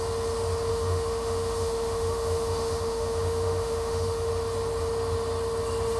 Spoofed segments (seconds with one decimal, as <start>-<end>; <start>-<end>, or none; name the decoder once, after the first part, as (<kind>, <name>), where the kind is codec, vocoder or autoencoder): 0.7-4.3 (autoencoder, DAC-VAE)